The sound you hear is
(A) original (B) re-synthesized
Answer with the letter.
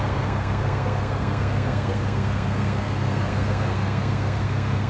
B